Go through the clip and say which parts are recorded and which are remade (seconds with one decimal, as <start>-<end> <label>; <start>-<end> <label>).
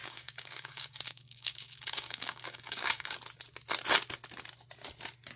0.0-3.2 remade; 3.2-5.4 recorded